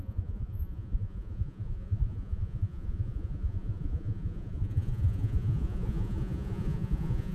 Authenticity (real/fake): fake